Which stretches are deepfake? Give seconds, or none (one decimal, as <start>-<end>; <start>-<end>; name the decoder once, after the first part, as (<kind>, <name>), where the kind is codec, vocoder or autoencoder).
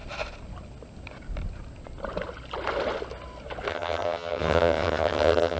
3.7-5.6 (vocoder, HiFi-GAN)